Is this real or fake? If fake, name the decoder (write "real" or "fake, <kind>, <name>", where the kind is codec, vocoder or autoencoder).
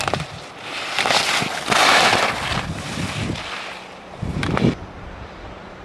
real